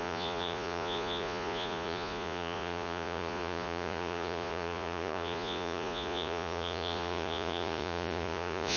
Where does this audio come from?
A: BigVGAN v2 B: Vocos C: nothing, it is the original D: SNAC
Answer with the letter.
B